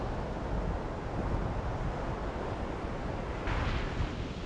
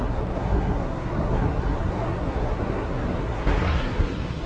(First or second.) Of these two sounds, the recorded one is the first